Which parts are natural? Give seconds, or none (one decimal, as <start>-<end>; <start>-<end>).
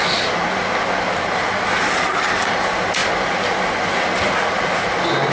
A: 0.0-5.3